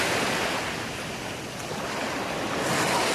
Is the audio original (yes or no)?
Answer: yes